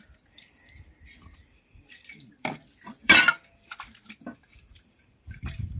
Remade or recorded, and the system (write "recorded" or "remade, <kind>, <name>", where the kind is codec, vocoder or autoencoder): remade, vocoder, BigVGAN v2